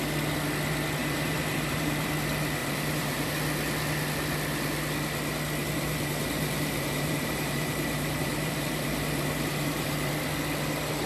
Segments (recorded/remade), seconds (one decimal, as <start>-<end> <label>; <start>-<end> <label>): 0.0-1.0 recorded; 1.0-2.1 remade; 2.1-2.6 recorded; 2.6-3.3 remade; 3.3-5.6 recorded; 5.6-10.1 remade; 10.1-11.1 recorded